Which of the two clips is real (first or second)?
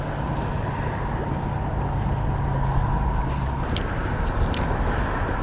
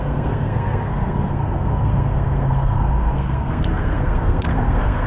first